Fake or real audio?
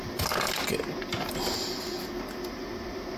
real